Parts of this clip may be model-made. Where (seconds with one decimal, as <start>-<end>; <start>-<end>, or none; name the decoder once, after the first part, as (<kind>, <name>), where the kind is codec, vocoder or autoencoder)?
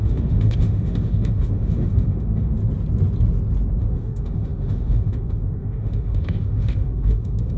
0.0-2.6 (autoencoder, DAC-VAE); 3.8-7.6